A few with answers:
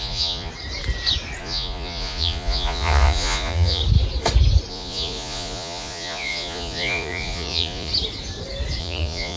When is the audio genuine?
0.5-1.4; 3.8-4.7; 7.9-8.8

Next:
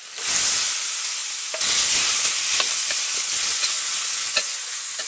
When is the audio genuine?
0.0-3.5

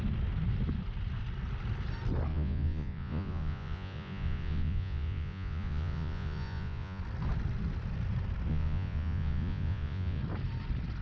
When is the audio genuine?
0.0-2.3; 7.0-8.5; 10.2-11.0

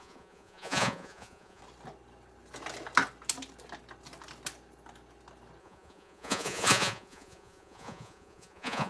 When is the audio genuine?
1.6-5.6